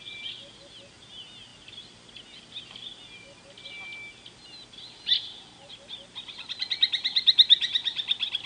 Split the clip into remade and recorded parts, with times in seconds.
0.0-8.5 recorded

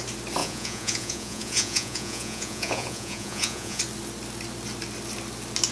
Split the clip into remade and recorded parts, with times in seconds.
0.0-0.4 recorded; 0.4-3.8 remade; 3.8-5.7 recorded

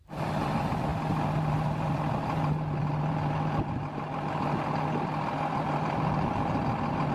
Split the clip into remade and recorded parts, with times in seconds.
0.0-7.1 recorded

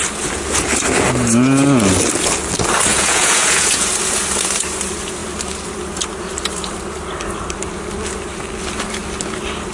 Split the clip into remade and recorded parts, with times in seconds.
0.0-2.9 recorded; 2.9-3.9 remade; 3.9-9.7 recorded

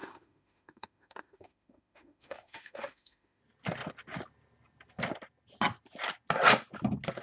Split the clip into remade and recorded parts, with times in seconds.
0.0-3.4 remade; 3.4-7.2 recorded

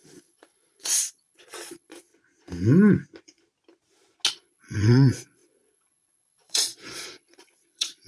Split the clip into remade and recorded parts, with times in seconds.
0.0-2.1 remade; 2.1-4.3 recorded; 4.3-8.1 remade